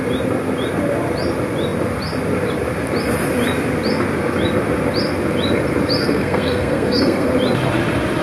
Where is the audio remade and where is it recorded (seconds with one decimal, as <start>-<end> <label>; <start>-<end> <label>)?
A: 0.0-6.0 recorded; 6.0-7.3 remade; 7.3-8.2 recorded